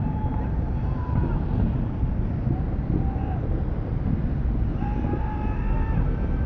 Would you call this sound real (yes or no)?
yes